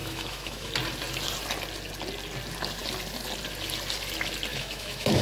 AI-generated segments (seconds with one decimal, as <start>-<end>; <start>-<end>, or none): 0.0-0.7; 4.5-5.2